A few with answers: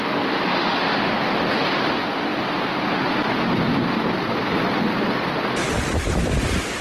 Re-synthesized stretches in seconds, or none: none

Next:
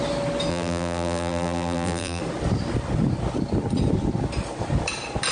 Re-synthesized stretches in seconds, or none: 0.5-2.2 (vocoder, BigVGAN v2)

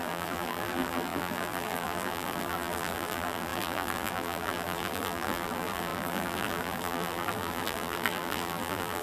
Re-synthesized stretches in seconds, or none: 0.0-9.0 (vocoder, BigVGAN v2)

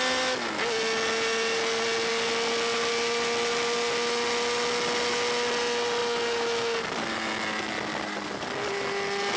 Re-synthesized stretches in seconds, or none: none